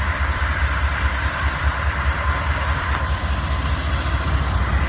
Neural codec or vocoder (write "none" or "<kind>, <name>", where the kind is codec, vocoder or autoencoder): vocoder, BigVGAN v2